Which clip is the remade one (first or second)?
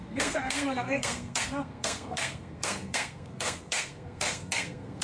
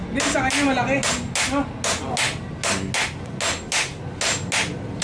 first